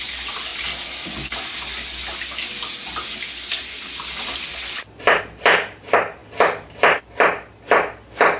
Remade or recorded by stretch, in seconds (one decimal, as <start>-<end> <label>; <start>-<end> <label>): 0.0-8.4 recorded